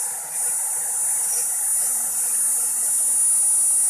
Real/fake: real